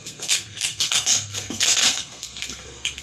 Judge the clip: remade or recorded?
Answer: remade